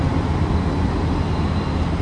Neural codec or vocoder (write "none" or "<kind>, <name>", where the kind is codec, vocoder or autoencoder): none